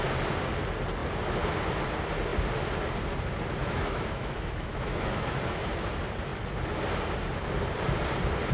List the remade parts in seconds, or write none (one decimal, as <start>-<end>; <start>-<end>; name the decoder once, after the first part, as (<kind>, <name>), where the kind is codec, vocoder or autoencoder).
3.6-5.7 (autoencoder, DAC-VAE)